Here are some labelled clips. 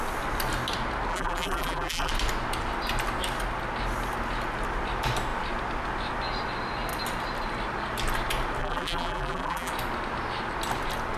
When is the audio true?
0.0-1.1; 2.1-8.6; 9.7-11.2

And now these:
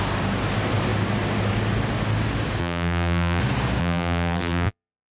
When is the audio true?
0.0-2.6; 3.4-3.8

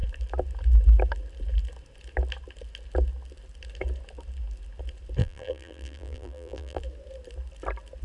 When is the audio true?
0.0-5.2; 6.8-8.0

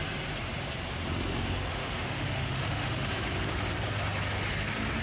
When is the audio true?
0.0-1.7; 3.1-5.0

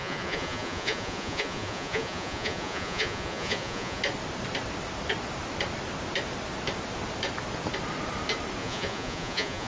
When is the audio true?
4.0-8.6